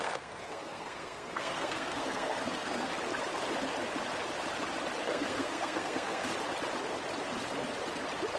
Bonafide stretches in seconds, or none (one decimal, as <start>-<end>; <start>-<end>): 2.9-5.0; 6.2-8.4